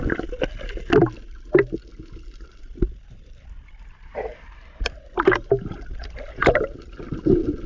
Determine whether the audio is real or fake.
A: real